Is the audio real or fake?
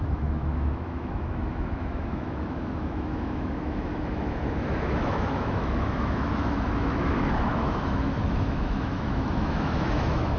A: fake